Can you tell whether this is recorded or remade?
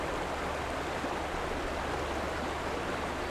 recorded